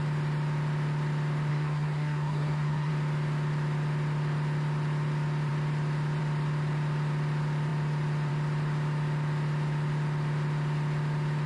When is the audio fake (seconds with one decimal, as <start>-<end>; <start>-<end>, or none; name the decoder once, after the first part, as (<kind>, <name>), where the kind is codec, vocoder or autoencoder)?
1.5-2.9 (codec, SNAC)